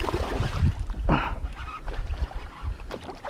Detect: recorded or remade remade